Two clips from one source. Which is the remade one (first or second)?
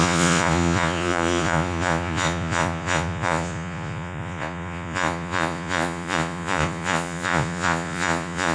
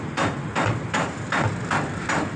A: first